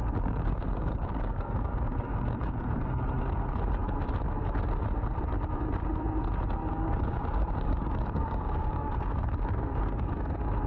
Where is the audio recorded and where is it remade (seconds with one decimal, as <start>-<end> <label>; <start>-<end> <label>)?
0.0-3.0 remade; 3.0-6.6 recorded; 6.6-10.7 remade